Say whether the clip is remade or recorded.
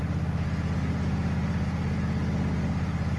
recorded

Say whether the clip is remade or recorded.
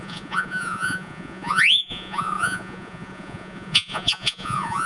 remade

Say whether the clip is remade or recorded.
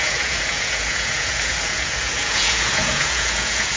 remade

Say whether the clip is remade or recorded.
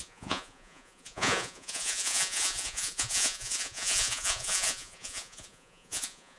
remade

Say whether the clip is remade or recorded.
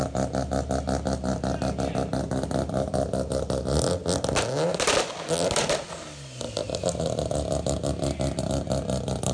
recorded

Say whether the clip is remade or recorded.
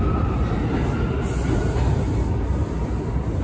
recorded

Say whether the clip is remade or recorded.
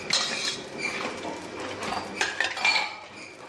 recorded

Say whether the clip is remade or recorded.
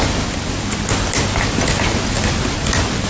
recorded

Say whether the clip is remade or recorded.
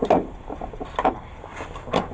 recorded